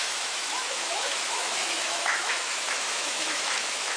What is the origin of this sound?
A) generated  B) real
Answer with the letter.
A